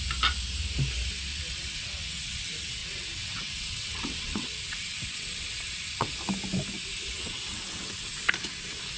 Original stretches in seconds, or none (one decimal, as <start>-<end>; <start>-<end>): 0.0-1.3; 2.4-2.8; 6.2-7.1; 8.1-9.0